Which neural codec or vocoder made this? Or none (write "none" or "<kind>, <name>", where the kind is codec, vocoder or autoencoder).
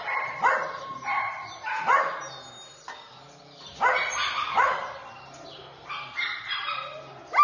none